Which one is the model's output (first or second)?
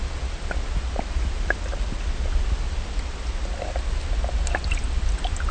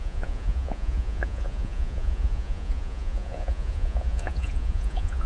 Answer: second